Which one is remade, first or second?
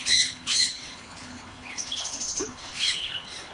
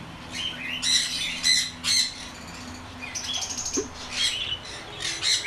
first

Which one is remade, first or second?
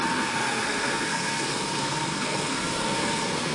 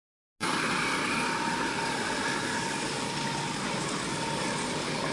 first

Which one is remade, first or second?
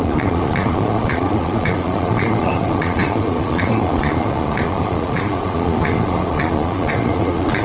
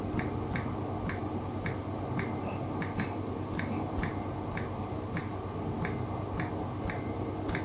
first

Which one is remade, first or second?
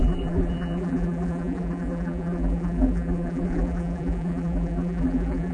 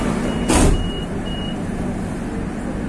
first